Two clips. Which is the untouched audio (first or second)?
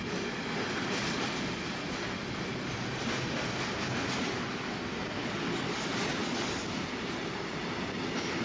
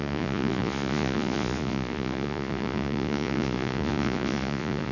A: first